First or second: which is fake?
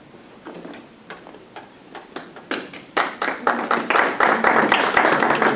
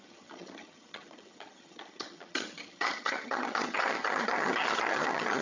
second